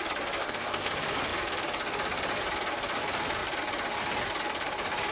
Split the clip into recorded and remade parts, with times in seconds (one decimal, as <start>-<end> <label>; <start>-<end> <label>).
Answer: 0.0-0.4 recorded; 0.4-0.9 remade; 0.9-5.1 recorded